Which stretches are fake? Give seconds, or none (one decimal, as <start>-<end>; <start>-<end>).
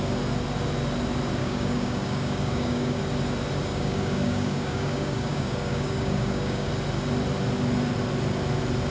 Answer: 1.4-3.0; 3.7-6.7